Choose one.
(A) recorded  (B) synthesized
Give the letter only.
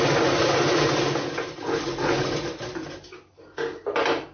A